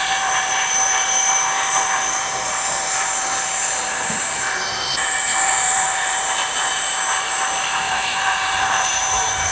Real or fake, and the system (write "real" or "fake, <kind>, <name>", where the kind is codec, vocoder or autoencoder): fake, vocoder, BigVGAN v2